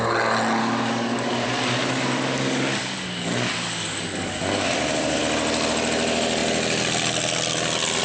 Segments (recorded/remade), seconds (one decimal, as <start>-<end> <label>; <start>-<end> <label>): 0.0-0.6 recorded; 0.6-5.2 remade; 5.2-8.0 recorded